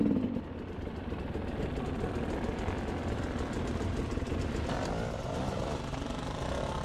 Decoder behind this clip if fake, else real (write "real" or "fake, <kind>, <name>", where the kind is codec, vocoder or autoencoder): real